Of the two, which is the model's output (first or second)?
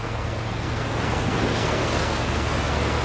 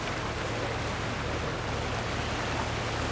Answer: first